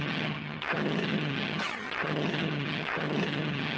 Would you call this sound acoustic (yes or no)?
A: no